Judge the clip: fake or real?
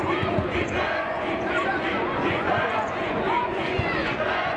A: fake